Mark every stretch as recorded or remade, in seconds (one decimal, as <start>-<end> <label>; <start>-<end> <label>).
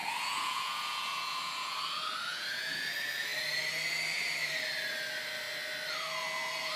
0.0-1.8 remade; 1.8-2.3 recorded; 2.3-2.9 remade; 2.9-6.8 recorded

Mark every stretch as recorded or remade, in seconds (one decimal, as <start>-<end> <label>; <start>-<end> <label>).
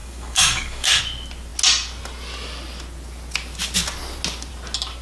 0.0-1.0 remade; 1.0-5.0 recorded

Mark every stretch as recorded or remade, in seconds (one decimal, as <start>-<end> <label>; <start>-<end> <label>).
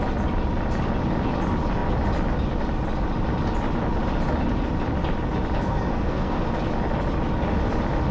0.0-5.6 recorded; 5.6-6.4 remade; 6.4-8.1 recorded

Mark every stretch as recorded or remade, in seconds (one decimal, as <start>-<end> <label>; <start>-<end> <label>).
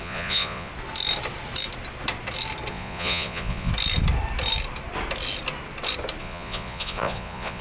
0.0-0.7 remade; 0.7-2.7 recorded; 2.7-3.7 remade; 3.7-6.2 recorded; 6.2-7.6 remade